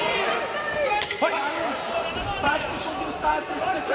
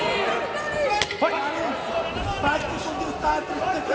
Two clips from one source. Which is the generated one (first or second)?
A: first